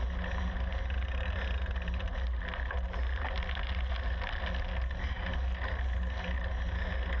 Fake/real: real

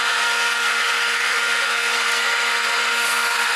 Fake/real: fake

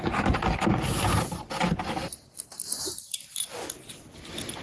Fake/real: real